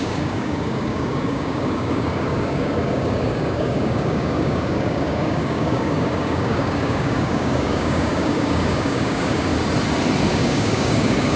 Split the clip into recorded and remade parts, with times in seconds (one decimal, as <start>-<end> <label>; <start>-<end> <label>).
0.0-9.5 remade; 9.5-10.3 recorded; 10.3-11.4 remade